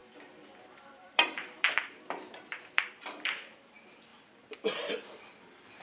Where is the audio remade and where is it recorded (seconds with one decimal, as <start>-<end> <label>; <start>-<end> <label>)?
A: 0.0-3.5 remade; 3.5-4.1 recorded; 4.1-5.0 remade; 5.0-5.8 recorded